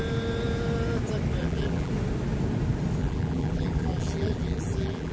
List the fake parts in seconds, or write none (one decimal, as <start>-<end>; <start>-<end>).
1.4-1.9; 3.0-5.1